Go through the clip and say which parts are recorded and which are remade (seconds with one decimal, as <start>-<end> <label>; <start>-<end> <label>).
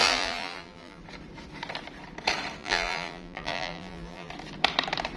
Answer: 0.0-1.0 remade; 1.0-2.6 recorded; 2.6-4.3 remade; 4.3-5.2 recorded